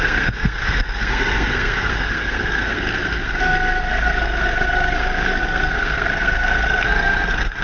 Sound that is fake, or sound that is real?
fake